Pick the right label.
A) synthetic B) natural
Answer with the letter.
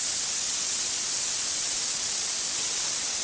A